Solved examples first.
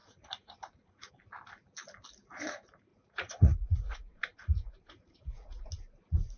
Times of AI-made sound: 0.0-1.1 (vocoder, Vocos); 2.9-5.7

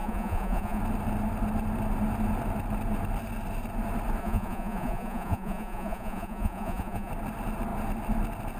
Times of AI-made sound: 0.0-0.8 (vocoder, Vocos); 4.2-7.1

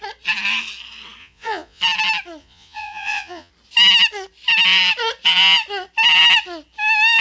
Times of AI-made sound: 1.2-1.8 (vocoder, Vocos); 2.4-3.5